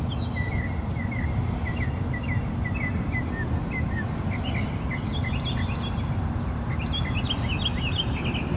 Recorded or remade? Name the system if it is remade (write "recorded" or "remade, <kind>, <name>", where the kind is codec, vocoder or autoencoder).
recorded